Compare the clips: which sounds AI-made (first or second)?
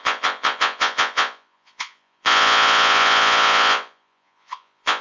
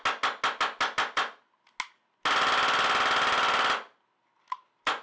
first